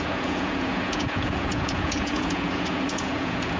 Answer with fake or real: fake